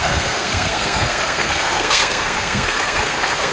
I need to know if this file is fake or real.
fake